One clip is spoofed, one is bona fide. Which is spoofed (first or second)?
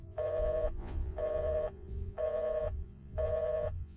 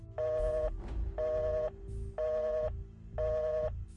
first